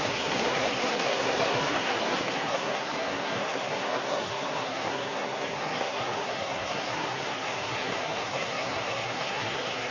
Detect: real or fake fake